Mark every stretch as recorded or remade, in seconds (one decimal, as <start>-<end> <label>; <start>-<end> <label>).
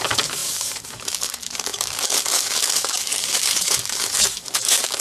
0.0-5.0 remade